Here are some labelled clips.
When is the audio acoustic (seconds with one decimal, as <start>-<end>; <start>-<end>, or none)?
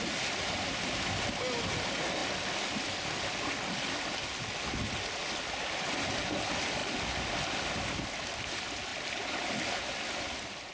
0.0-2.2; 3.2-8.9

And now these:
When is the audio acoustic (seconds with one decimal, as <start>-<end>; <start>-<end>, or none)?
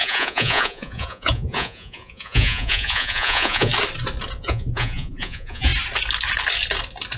3.7-4.4; 5.7-7.2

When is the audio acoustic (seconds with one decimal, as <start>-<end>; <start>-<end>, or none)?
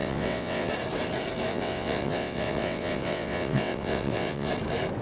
0.7-1.5; 4.5-5.0